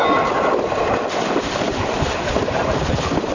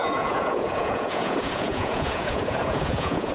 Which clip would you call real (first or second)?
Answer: first